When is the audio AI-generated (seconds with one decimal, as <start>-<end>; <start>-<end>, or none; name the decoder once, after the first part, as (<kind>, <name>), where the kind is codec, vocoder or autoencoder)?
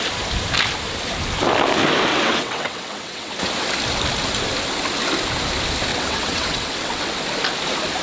2.1-3.3 (vocoder, WaveNeXt); 5.9-7.2